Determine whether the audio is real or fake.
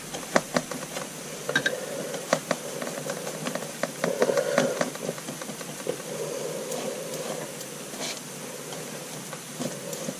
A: real